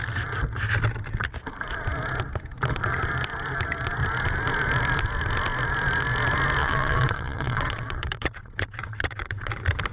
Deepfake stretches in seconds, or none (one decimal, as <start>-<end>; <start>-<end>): 6.6-9.5